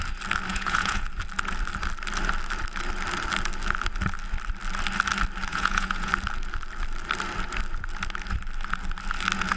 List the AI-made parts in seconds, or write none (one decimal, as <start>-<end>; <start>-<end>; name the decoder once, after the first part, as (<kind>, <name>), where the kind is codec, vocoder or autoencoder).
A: 0.5-1.1 (vocoder, Vocos); 5.5-6.1